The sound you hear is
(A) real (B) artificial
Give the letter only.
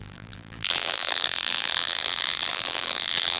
B